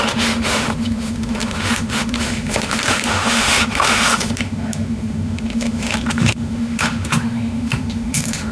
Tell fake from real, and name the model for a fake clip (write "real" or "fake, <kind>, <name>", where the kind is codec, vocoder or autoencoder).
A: fake, autoencoder, DAC-VAE